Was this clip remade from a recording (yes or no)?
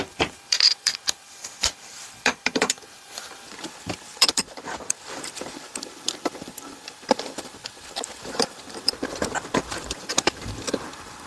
yes